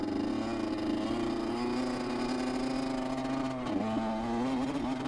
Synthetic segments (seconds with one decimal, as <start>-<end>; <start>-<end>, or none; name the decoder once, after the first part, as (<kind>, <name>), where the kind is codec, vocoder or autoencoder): none